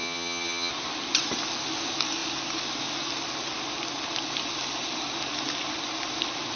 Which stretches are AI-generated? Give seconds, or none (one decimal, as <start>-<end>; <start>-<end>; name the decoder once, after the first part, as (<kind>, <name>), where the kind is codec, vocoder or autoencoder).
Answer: 0.0-0.7 (vocoder, HiFi-GAN)